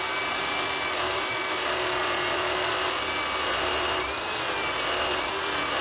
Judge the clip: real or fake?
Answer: real